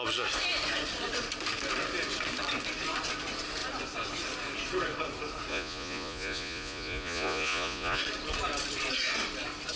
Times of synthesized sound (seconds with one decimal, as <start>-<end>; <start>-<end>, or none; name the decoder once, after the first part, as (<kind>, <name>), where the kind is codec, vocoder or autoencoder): 5.5-8.0 (vocoder, Vocos)